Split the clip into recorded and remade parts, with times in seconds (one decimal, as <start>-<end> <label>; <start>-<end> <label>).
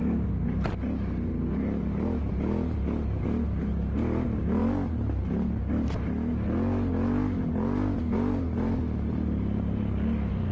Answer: 0.0-10.5 recorded